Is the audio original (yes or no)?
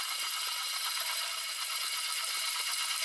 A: no